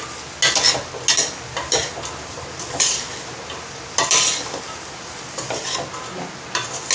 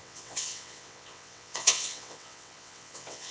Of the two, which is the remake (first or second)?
second